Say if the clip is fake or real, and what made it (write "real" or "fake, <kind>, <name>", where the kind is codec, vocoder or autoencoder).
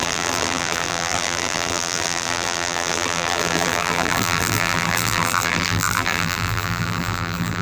fake, vocoder, BigVGAN v2